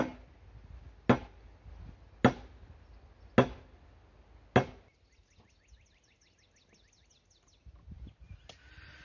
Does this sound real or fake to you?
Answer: real